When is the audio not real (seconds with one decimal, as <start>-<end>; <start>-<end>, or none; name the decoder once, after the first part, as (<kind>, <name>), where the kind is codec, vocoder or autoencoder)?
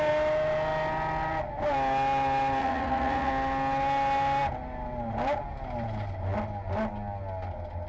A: 2.6-3.3 (vocoder, Vocos)